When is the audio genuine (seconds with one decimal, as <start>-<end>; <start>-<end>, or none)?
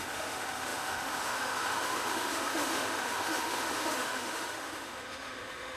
none